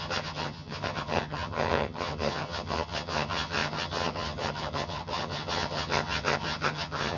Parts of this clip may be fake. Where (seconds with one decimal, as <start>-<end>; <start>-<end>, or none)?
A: 0.0-7.2